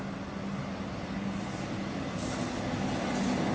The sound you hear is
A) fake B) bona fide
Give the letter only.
B